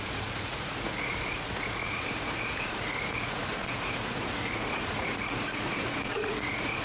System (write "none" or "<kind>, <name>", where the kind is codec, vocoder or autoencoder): vocoder, Vocos